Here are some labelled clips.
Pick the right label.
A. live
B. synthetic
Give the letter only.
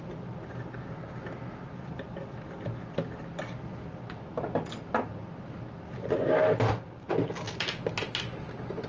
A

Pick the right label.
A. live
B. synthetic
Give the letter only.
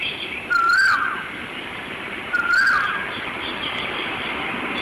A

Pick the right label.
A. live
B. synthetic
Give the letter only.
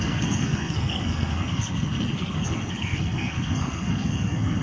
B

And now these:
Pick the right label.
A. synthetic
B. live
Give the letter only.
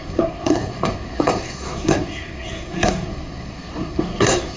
A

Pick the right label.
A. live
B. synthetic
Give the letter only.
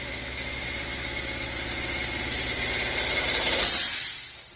A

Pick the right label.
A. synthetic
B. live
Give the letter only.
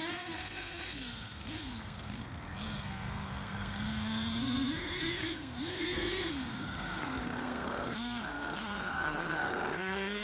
A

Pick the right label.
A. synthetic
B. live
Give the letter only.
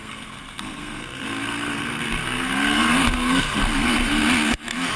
A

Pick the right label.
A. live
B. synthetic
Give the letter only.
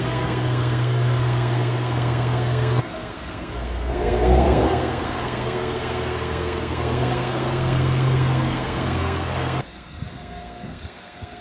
B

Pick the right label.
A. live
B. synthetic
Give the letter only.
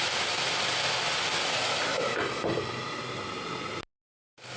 A